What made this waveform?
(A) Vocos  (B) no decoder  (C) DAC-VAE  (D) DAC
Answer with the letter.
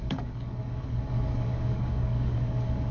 D